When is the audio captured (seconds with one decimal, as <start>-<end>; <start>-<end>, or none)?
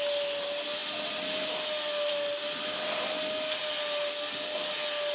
0.0-5.1